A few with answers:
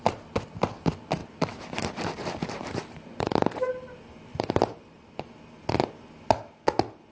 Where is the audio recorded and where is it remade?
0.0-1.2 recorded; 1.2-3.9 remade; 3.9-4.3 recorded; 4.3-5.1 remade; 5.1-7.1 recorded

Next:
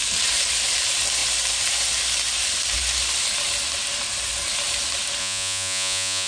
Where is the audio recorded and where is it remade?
0.0-5.2 recorded; 5.2-6.3 remade